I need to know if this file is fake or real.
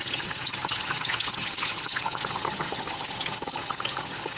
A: fake